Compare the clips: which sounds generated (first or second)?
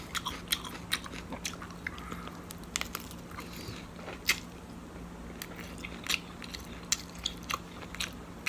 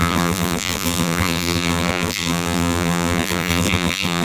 second